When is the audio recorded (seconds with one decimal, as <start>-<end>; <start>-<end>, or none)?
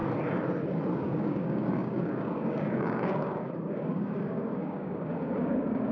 0.0-0.9